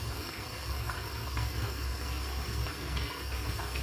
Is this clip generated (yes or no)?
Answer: yes